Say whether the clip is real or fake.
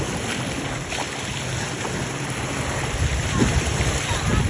real